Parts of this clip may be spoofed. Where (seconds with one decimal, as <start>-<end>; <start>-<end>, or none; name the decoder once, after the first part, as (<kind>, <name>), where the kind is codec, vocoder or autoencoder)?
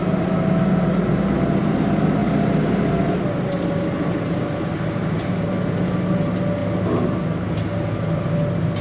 none